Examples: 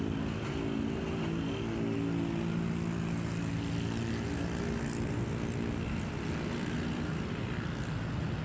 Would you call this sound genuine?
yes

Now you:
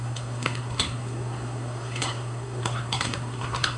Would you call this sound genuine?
no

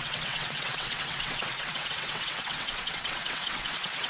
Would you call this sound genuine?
no